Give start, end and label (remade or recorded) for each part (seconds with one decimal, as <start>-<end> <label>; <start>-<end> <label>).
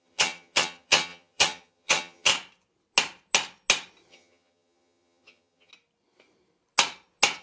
0.0-2.3 remade; 2.3-4.1 recorded; 4.1-5.7 remade; 5.7-7.4 recorded